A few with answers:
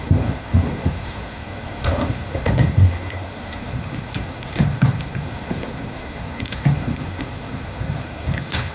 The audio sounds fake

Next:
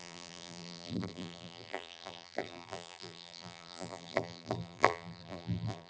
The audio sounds fake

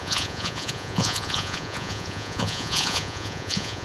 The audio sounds fake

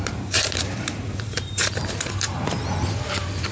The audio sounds fake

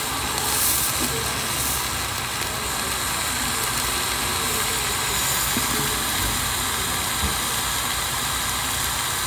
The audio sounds real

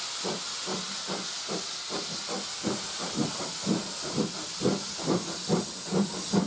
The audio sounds real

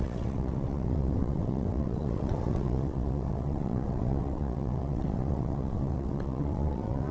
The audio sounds fake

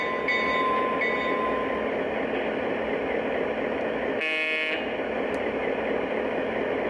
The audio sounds real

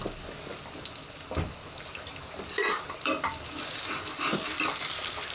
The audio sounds real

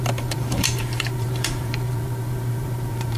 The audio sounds fake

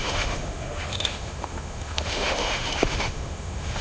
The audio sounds fake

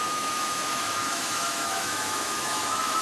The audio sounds fake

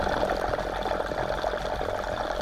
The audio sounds real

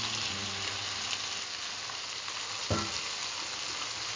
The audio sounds real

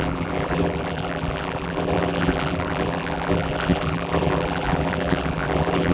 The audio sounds fake